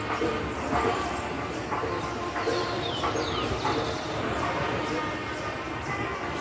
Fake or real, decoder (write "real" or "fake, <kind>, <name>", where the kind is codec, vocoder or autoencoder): real